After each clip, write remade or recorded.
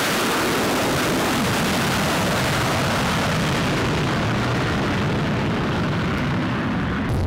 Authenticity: recorded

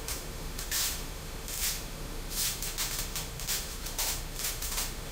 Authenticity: remade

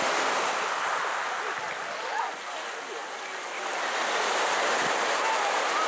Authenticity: recorded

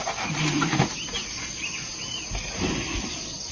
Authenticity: recorded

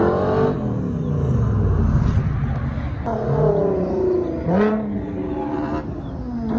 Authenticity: recorded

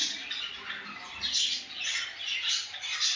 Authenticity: recorded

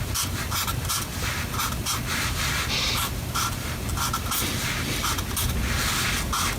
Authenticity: recorded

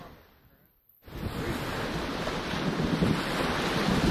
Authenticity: recorded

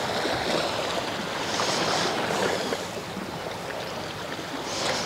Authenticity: recorded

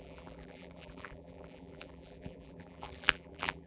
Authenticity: remade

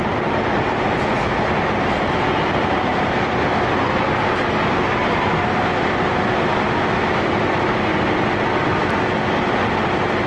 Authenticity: recorded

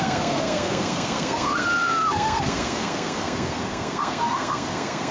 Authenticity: remade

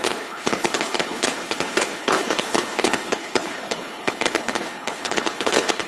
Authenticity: remade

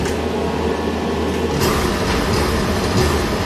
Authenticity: recorded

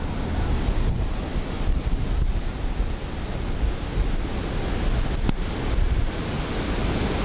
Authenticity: recorded